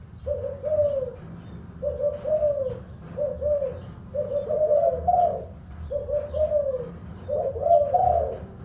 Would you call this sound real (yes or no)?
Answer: yes